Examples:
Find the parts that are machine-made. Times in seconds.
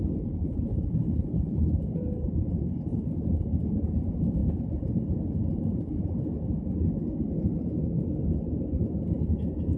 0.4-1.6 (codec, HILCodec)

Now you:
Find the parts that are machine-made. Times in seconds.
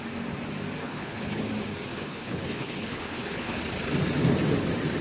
0.8-1.4 (codec, HILCodec); 1.9-3.6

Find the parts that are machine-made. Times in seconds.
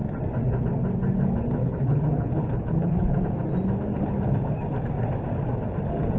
1.6-3.2 (codec, HILCodec)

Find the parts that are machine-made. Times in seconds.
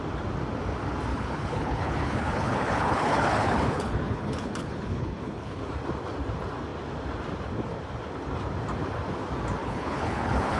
1.1-5.6 (codec, HILCodec); 9.6-10.6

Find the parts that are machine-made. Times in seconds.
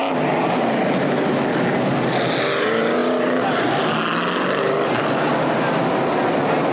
none